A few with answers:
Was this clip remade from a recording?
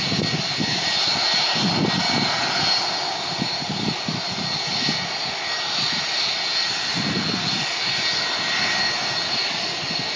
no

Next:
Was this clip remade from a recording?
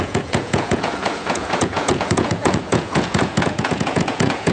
yes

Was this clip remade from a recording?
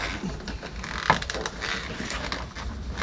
no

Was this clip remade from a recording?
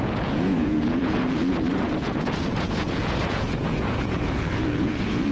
yes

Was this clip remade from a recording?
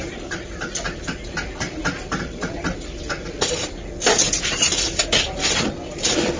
no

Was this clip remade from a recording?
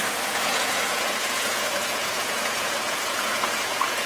yes